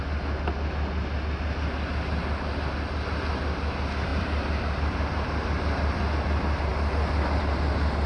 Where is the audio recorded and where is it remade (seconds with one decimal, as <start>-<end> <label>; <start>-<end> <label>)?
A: 0.0-4.1 recorded; 4.1-6.1 remade; 6.1-8.1 recorded